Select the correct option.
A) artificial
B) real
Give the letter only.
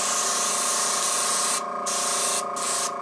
B